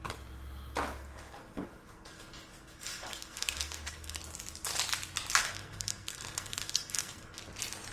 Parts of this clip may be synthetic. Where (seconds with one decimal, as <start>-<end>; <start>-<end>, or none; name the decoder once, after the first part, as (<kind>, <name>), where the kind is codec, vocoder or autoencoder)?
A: 1.0-4.2 (codec, SNAC); 5.4-7.4